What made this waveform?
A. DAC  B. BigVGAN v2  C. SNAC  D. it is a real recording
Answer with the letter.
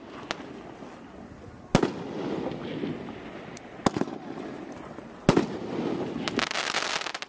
D